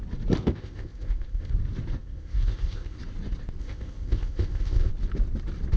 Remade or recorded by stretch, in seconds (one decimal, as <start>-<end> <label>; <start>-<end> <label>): 0.0-0.4 recorded; 0.4-1.5 remade; 1.5-2.0 recorded; 2.0-3.0 remade; 3.0-3.6 recorded; 3.6-4.9 remade; 4.9-5.8 recorded